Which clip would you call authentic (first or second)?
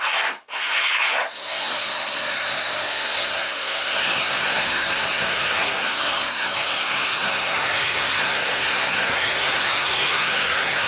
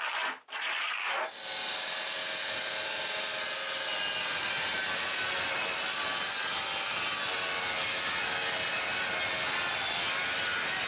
second